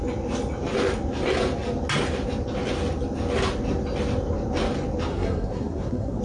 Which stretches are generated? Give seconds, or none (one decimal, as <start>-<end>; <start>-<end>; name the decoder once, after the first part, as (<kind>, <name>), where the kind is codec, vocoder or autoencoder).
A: 5.1-6.2 (codec, SNAC)